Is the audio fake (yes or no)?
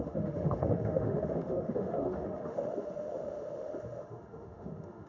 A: yes